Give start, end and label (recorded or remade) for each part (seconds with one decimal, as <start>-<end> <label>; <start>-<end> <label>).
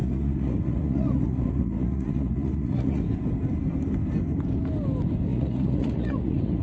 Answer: 0.0-3.0 remade; 3.0-5.3 recorded; 5.3-6.6 remade